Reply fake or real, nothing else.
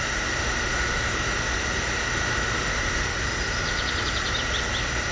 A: real